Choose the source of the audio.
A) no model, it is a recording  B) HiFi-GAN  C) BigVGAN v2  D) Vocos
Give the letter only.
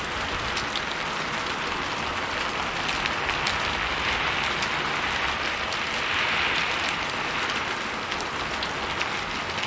A